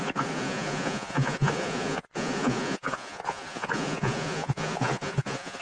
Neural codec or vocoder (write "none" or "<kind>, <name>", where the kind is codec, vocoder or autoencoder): vocoder, Vocos